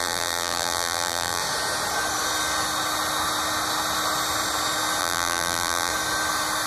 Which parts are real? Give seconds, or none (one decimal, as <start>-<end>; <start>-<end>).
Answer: 1.4-5.0; 5.9-6.7